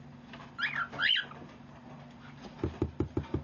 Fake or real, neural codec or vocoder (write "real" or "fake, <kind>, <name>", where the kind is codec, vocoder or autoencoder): real